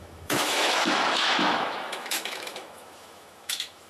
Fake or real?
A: fake